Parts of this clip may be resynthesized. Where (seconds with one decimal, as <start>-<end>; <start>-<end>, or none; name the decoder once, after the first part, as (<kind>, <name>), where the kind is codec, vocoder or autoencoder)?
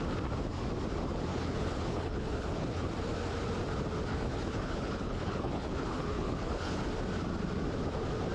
1.3-2.9 (codec, HILCodec); 4.1-6.8